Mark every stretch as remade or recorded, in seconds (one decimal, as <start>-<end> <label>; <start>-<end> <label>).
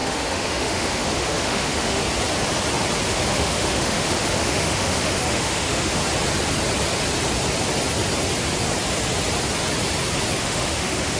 0.0-2.0 remade; 2.0-3.1 recorded; 3.1-6.0 remade; 6.0-10.4 recorded; 10.4-11.2 remade